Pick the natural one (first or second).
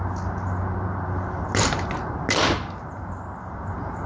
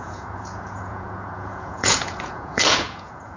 first